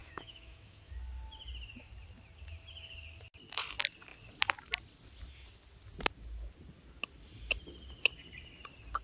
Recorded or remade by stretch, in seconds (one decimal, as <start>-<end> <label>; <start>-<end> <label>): 0.0-0.9 remade; 0.9-9.0 recorded